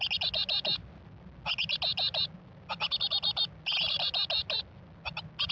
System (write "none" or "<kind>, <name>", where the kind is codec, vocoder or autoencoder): none